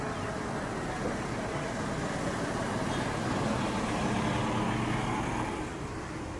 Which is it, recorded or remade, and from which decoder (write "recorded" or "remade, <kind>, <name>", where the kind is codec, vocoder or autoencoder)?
recorded